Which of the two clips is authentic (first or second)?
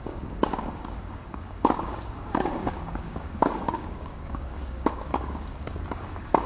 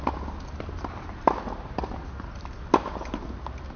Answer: second